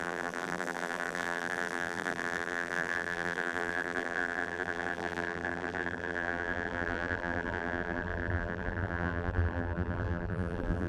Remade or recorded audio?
remade